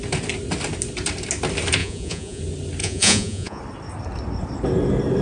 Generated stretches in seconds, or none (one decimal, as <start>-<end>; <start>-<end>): 1.8-2.4; 2.8-3.6